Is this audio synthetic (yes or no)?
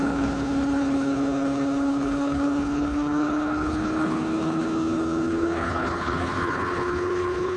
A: yes